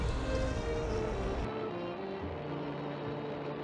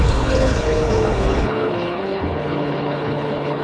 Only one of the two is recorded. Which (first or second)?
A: first